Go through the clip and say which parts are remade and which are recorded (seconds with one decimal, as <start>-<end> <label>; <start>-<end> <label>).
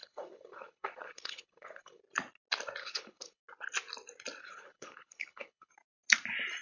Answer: 0.0-2.0 remade; 2.0-2.8 recorded; 2.8-3.4 remade; 3.4-4.4 recorded; 4.4-5.7 remade; 5.7-6.6 recorded